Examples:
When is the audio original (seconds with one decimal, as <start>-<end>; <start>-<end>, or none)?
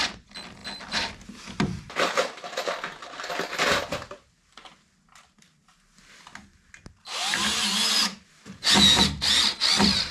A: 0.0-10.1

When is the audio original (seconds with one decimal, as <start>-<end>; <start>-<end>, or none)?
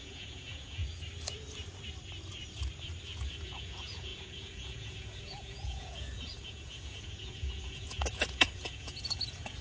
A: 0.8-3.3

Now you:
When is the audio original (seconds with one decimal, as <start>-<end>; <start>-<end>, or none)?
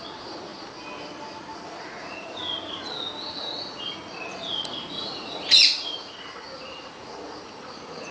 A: 0.5-1.8; 2.4-3.2